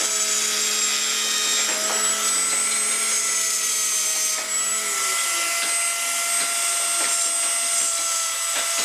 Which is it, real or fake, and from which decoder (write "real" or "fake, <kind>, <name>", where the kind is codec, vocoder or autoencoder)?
real